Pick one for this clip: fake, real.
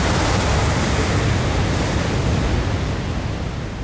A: real